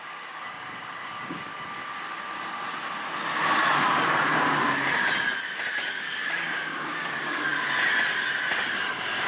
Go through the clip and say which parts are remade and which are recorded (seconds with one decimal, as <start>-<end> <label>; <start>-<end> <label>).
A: 0.0-1.5 remade; 1.5-5.7 recorded; 5.7-7.5 remade; 7.5-8.9 recorded; 8.9-9.3 remade